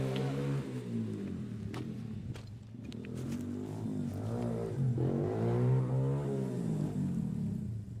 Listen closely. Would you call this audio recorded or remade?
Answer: recorded